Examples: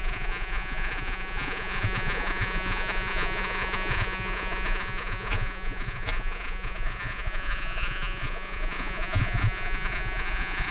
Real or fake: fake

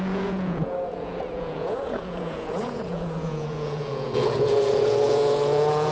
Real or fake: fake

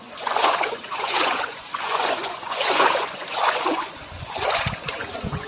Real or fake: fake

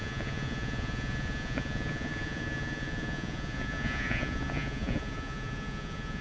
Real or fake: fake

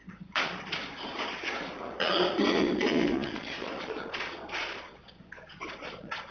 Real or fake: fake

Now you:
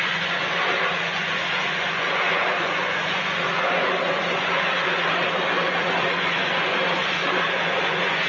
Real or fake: fake